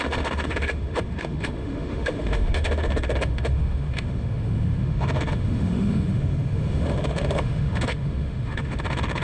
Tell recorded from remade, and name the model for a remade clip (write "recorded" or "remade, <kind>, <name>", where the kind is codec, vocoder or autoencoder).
remade, autoencoder, DAC-VAE